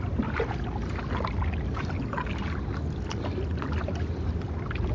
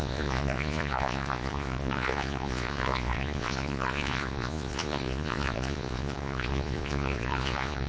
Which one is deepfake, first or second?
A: second